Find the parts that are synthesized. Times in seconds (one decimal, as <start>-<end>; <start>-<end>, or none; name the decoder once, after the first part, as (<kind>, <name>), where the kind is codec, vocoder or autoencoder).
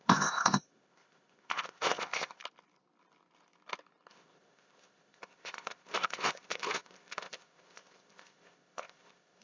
0.0-2.4 (codec, ZipCodec); 4.1-9.4